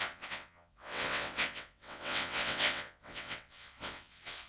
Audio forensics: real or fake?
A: fake